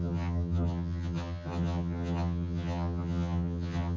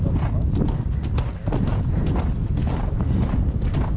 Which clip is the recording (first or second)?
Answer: second